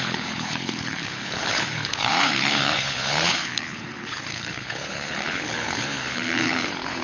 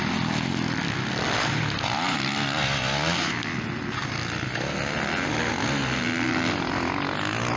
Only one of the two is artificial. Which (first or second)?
first